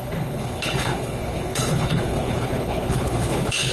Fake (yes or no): yes